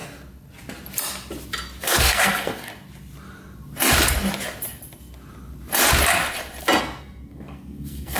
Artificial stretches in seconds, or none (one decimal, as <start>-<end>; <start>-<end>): 1.8-2.7; 6.8-8.2